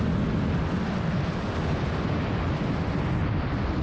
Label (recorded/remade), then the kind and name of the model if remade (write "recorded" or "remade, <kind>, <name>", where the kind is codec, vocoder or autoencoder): recorded